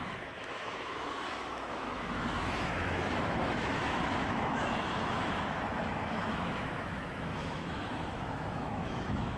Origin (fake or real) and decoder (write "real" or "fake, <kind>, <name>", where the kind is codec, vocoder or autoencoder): fake, autoencoder, DAC-VAE